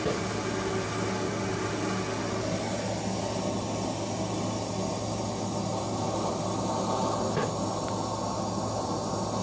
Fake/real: real